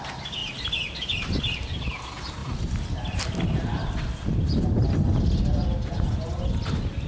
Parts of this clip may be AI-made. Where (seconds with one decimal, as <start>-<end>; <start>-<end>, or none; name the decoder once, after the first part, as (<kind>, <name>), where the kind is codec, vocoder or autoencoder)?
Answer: none